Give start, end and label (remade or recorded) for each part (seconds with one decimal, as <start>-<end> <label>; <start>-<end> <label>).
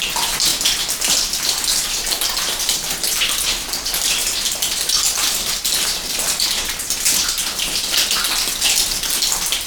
0.0-9.7 recorded